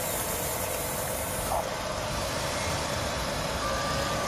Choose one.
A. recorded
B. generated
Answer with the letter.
B